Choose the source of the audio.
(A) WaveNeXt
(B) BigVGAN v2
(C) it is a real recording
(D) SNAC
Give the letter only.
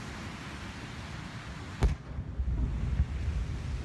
C